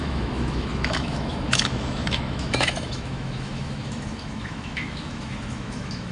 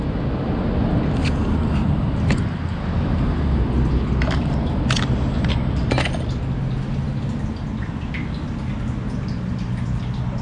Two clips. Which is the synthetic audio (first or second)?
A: first